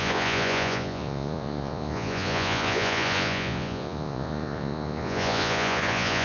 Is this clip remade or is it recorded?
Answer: remade